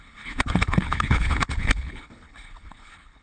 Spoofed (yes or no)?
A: yes